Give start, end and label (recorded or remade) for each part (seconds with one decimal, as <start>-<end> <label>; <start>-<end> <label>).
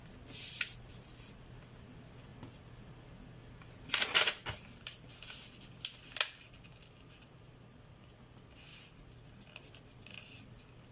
0.0-10.9 recorded